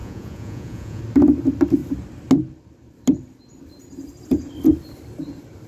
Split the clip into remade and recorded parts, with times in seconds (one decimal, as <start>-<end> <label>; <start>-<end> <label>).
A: 0.0-1.0 remade; 1.0-5.7 recorded